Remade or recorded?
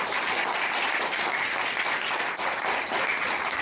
recorded